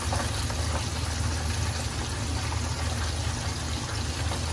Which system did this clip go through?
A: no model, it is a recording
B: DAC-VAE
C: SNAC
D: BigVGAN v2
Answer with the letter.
A